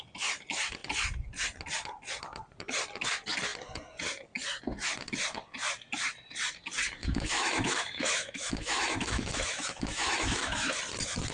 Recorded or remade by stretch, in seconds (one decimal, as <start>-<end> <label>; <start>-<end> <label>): 0.0-7.0 recorded; 7.0-10.8 remade; 10.8-11.3 recorded